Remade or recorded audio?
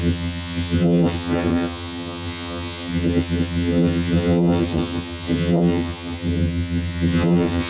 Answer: remade